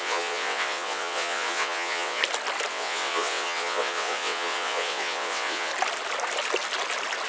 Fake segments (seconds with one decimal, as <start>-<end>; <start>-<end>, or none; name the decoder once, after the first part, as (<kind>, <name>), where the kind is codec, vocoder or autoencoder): 0.0-2.2 (vocoder, WaveNeXt); 2.7-5.7